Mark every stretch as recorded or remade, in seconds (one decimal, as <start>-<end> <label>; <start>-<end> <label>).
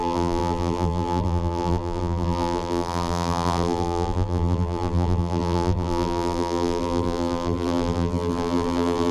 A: 0.0-9.1 remade